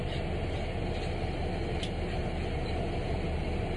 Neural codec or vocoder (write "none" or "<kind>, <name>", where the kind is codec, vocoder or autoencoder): none